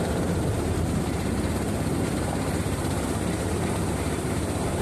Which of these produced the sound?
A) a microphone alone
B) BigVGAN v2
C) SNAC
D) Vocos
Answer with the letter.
B